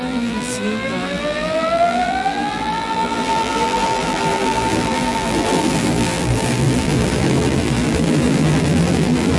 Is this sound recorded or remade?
remade